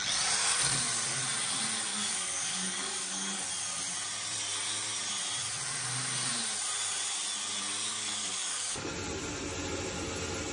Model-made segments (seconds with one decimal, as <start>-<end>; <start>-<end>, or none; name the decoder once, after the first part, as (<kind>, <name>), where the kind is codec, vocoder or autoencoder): 1.9-3.5 (codec, DAC); 7.9-8.9